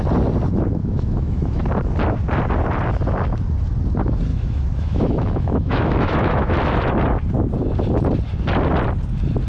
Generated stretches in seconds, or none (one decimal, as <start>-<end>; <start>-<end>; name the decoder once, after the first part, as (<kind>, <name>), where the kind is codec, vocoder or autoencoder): 0.8-1.6 (autoencoder, DAC-VAE); 4.3-6.5